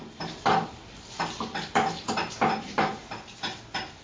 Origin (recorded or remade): recorded